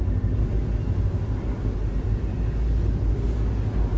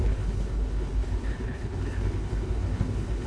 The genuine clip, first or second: first